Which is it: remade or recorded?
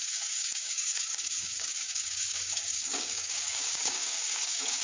remade